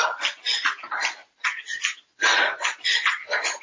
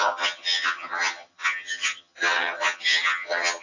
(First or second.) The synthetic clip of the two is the second